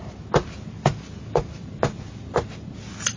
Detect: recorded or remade recorded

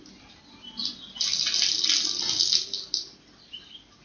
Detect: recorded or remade recorded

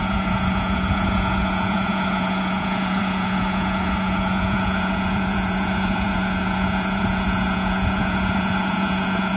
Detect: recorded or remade remade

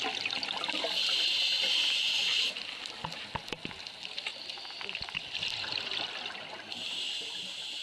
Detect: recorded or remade recorded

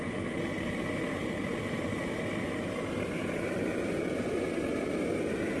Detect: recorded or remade recorded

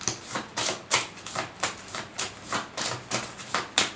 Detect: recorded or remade recorded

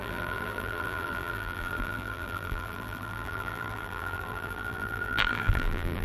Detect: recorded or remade remade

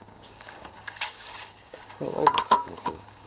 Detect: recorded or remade remade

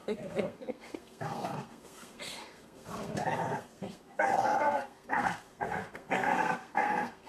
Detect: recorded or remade remade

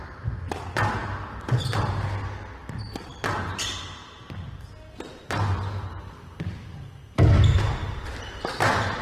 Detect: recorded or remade recorded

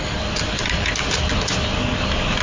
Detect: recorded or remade recorded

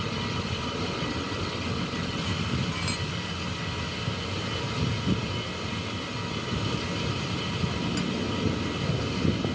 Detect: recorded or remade recorded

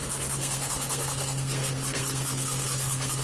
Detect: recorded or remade remade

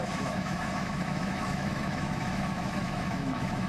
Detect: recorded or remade remade